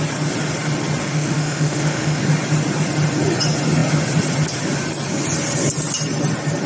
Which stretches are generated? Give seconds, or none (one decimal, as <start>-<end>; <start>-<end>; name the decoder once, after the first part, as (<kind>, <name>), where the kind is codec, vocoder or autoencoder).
1.0-2.2 (autoencoder, DAC-VAE)